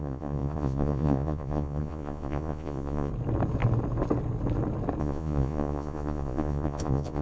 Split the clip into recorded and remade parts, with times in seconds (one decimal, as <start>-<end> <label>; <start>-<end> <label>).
0.0-3.1 remade; 3.1-5.0 recorded; 5.0-7.2 remade